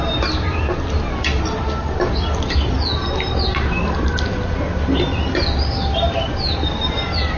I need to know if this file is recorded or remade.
recorded